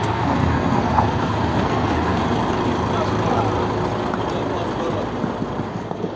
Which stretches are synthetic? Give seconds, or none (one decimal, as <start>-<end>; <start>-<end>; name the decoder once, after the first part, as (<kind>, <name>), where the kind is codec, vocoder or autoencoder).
0.0-2.2 (codec, SNAC); 5.7-6.2